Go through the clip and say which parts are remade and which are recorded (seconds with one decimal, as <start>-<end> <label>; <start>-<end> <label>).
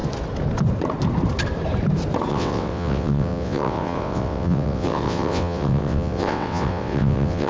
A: 0.0-2.3 recorded; 2.3-7.5 remade